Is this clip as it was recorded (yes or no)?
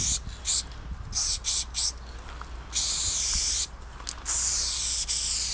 yes